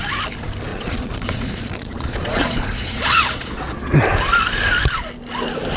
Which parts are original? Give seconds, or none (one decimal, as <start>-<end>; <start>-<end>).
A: 0.0-0.7; 3.9-5.8